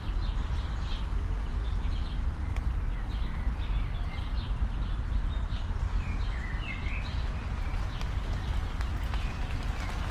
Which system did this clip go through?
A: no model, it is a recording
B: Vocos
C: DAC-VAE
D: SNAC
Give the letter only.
A